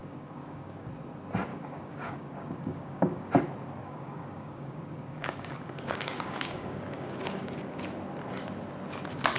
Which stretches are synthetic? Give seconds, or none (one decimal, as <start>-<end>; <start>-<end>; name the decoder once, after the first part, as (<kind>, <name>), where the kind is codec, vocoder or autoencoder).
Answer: 0.0-0.9 (codec, DAC); 1.5-3.3; 3.8-7.8